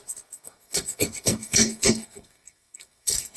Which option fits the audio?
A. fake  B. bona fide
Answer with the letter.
A